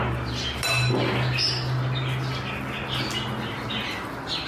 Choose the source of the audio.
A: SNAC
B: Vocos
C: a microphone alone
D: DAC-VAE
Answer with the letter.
C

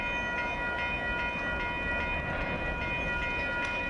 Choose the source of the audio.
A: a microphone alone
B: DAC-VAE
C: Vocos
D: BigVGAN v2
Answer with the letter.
A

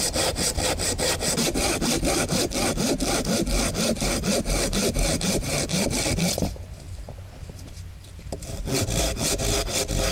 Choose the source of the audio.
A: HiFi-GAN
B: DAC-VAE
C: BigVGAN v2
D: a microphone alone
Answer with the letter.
D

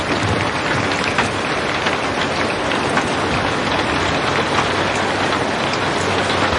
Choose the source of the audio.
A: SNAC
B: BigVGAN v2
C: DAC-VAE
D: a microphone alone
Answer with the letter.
D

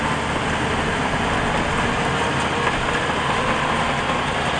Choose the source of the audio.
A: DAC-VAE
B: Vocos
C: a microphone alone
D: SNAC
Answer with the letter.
C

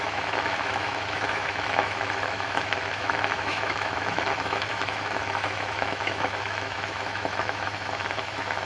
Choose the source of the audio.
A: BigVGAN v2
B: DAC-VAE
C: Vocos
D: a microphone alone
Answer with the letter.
B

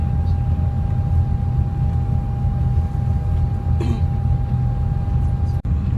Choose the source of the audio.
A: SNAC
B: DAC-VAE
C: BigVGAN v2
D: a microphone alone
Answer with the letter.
D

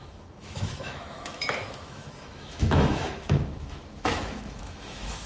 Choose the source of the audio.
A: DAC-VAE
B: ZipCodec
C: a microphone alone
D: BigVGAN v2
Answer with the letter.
A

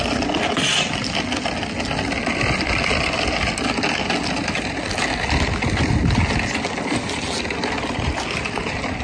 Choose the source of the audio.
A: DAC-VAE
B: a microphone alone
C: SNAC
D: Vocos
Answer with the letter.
B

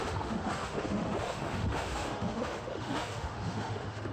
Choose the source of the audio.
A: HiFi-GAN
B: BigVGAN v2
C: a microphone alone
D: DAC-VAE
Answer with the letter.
D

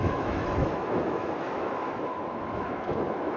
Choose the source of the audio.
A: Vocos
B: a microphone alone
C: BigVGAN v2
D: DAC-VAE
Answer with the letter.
D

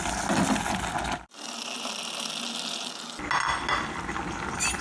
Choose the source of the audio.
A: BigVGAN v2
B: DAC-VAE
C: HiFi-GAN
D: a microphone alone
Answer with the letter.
D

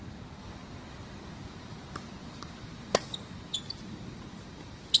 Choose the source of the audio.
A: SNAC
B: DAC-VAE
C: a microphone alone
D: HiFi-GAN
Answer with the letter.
C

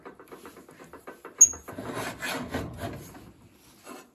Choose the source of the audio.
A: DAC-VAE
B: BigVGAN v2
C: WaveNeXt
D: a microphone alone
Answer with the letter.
D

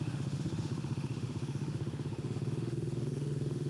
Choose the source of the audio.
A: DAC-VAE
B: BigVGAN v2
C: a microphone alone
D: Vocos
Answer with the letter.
A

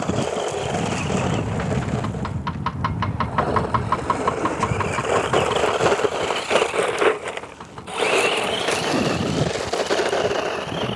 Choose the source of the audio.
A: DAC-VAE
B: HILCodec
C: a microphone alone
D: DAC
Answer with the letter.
C